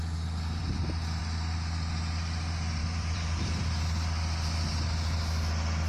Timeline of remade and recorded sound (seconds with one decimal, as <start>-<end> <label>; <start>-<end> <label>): 0.0-2.8 recorded; 2.8-3.6 remade; 3.6-5.9 recorded